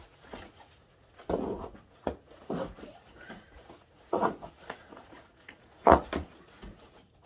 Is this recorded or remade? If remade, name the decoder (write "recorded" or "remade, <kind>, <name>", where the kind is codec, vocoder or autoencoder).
remade, vocoder, Vocos